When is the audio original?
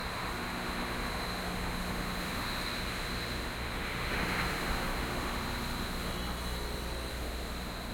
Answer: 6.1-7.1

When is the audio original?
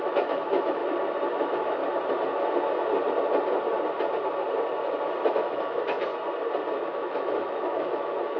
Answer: 0.8-1.3; 1.8-5.3; 6.1-6.7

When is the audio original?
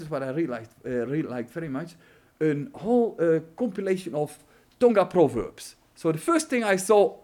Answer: 0.0-4.4; 4.9-7.2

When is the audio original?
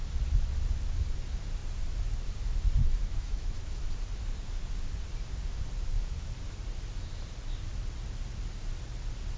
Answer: 0.0-2.8; 3.8-9.4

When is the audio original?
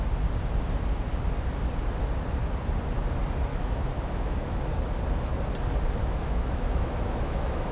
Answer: 0.0-3.5; 4.7-6.0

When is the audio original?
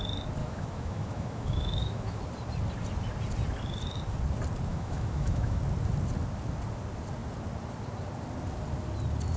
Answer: 0.0-0.4; 2.2-4.7; 5.6-9.4